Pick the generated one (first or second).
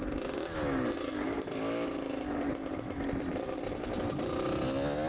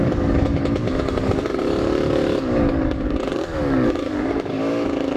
second